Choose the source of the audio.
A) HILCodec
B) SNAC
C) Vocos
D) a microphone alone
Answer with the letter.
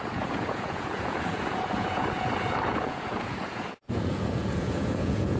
C